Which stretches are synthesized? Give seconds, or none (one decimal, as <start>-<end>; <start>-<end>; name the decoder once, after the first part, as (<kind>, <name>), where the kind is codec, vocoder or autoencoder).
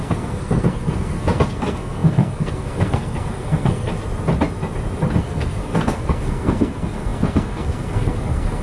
0.0-3.9 (codec, SNAC); 5.2-8.6